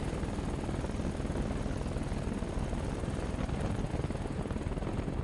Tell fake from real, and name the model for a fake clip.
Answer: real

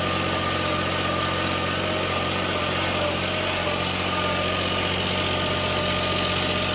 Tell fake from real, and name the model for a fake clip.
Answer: real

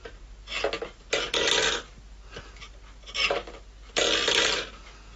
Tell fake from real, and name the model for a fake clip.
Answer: real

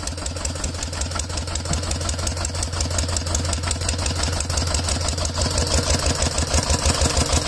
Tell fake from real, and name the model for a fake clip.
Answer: real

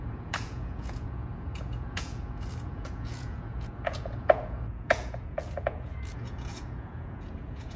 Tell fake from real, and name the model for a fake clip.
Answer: fake, vocoder, Vocos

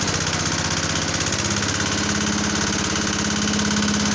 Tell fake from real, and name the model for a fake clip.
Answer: real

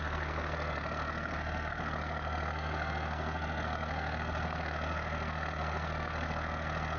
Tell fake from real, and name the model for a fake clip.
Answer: fake, codec, SNAC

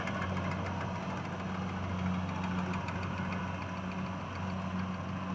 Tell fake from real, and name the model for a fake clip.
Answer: real